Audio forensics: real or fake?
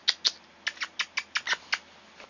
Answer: real